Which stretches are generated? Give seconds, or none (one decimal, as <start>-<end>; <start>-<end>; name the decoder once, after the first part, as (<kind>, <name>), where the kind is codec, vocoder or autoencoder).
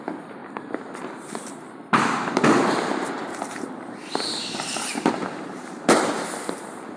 0.4-1.3 (vocoder, BigVGAN v2); 1.9-6.1